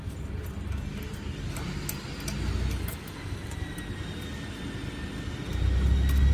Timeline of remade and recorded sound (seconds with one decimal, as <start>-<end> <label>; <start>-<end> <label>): 0.0-6.3 recorded